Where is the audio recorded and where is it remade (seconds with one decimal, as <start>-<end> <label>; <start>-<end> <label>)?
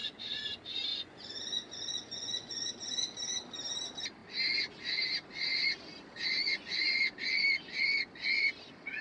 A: 0.0-0.5 remade; 0.5-0.9 recorded; 0.9-2.7 remade; 2.7-6.4 recorded; 6.4-7.0 remade; 7.0-9.0 recorded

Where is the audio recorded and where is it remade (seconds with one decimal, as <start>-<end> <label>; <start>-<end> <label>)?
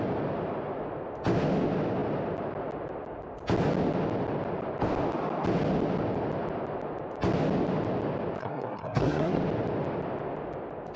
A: 0.0-8.4 recorded; 8.4-9.4 remade; 9.4-11.0 recorded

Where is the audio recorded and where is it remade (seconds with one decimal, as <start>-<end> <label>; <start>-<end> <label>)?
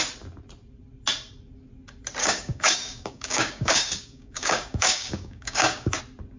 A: 0.0-2.2 recorded; 2.2-6.0 remade; 6.0-6.4 recorded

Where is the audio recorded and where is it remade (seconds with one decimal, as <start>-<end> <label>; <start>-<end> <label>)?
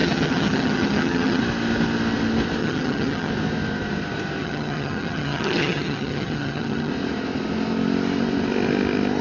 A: 0.0-1.4 remade; 1.4-2.6 recorded; 2.6-3.3 remade; 3.3-4.4 recorded; 4.4-6.9 remade; 6.9-9.2 recorded